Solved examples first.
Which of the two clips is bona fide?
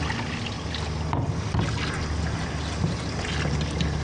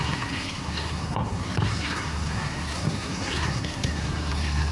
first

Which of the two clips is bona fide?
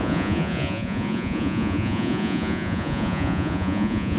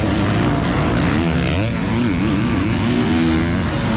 second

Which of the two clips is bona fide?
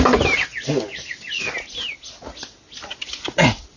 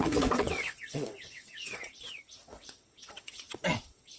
first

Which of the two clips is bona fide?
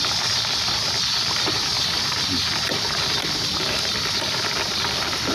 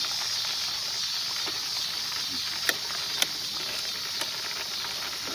second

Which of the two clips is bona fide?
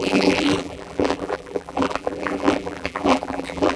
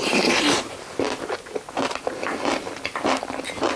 second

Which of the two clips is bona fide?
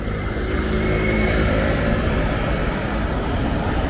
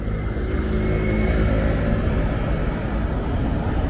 second